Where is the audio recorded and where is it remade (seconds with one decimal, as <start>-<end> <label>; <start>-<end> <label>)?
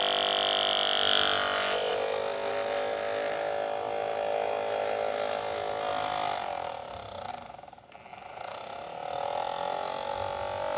0.0-1.9 recorded; 1.9-2.5 remade; 2.5-5.9 recorded; 5.9-7.3 remade; 7.3-10.8 recorded